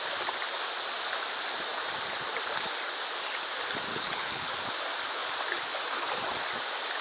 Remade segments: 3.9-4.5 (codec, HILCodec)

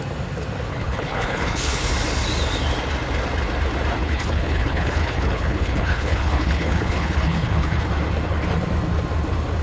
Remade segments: 0.7-1.9 (codec, HILCodec); 4.0-7.9

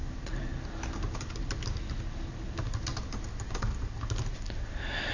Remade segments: none

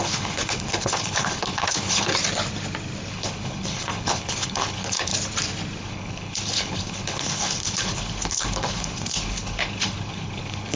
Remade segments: 0.0-2.1 (codec, HILCodec); 3.1-5.1; 5.8-10.8

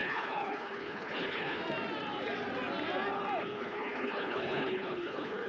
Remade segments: 0.0-1.6 (codec, HILCodec); 3.4-5.5